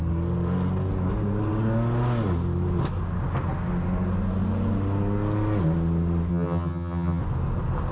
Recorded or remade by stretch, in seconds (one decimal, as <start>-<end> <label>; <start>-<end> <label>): 0.0-6.3 recorded; 6.3-7.2 remade; 7.2-7.9 recorded